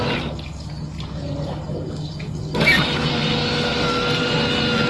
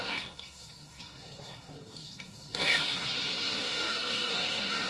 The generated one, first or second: second